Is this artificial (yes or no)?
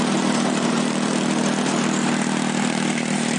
yes